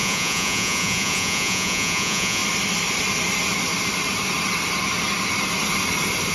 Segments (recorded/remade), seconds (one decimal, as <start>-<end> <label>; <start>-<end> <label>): 0.0-2.4 remade; 2.4-6.3 recorded